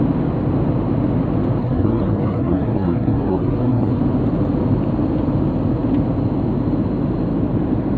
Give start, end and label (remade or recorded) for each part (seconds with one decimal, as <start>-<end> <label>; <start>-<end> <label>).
0.0-1.6 recorded; 1.6-4.0 remade; 4.0-8.0 recorded